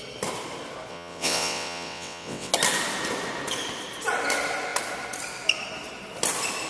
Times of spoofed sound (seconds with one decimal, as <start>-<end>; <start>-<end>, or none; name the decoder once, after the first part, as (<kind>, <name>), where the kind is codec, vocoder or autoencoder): 0.9-2.5 (vocoder, WaveNeXt)